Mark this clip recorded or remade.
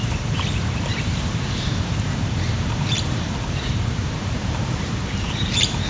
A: remade